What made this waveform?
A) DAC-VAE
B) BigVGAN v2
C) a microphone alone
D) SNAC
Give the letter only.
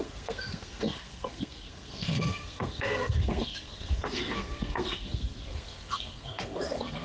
D